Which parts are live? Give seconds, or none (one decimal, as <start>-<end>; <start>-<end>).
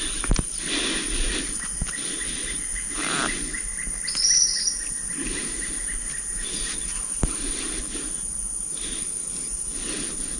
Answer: 0.0-10.4